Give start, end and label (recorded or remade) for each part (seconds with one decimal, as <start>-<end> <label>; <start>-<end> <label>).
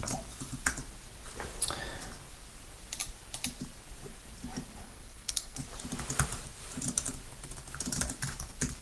0.0-4.8 recorded; 4.8-5.6 remade; 5.6-8.8 recorded